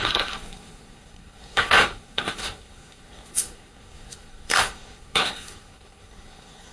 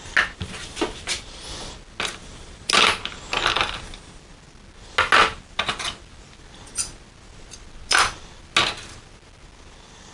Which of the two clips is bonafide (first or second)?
second